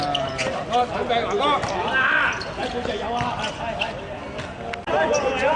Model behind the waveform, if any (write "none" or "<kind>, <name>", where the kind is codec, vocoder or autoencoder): none